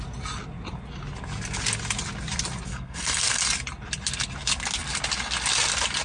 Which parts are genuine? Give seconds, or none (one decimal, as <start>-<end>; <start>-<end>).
0.0-2.7; 3.4-6.0